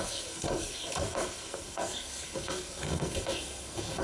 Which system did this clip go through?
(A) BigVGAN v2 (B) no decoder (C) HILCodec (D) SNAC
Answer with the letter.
D